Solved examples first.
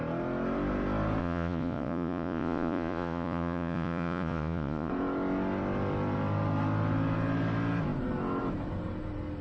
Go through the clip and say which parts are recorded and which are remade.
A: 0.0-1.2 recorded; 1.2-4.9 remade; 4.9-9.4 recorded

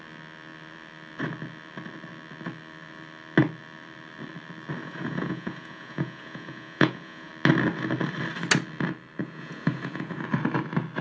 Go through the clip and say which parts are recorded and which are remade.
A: 0.0-4.8 recorded; 4.8-7.3 remade; 7.3-9.2 recorded; 9.2-10.2 remade; 10.2-11.0 recorded

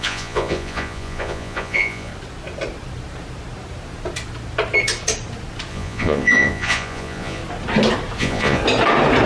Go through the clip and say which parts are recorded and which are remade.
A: 0.0-2.1 remade; 2.1-5.7 recorded; 5.7-7.4 remade; 7.4-8.2 recorded; 8.2-8.6 remade; 8.6-9.3 recorded

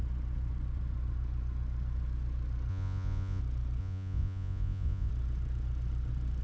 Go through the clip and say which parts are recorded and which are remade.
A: 0.0-2.7 recorded; 2.7-3.4 remade; 3.4-3.8 recorded; 3.8-5.1 remade; 5.1-6.4 recorded

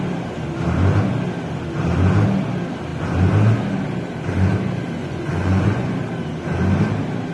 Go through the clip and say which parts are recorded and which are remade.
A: 0.0-5.0 recorded; 5.0-5.9 remade; 5.9-7.3 recorded

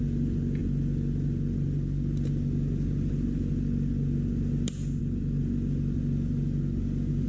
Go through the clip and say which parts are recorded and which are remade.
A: 0.0-7.3 recorded

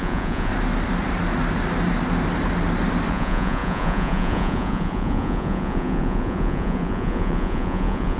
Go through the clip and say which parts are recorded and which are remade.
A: 0.0-0.5 remade; 0.5-3.1 recorded; 3.1-8.2 remade